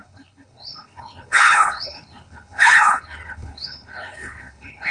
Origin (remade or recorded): remade